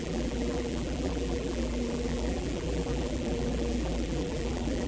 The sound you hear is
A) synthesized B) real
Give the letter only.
A